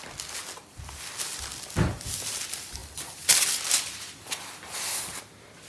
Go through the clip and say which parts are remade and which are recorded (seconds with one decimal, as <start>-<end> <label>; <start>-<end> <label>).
0.0-5.7 recorded